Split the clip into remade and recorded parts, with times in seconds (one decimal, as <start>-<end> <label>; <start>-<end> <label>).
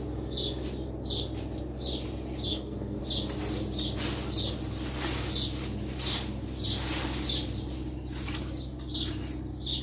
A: 0.0-2.5 recorded; 2.5-3.0 remade; 3.0-9.8 recorded